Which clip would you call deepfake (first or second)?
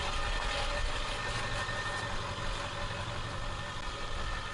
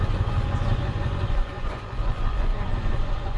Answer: second